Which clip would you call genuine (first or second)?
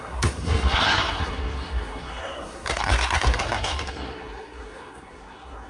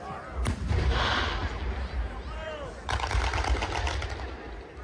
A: second